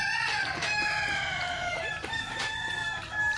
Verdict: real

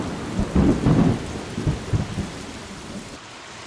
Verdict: real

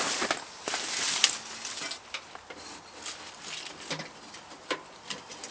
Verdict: real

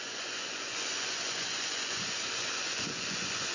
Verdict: fake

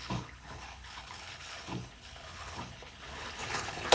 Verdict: fake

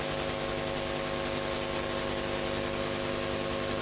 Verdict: real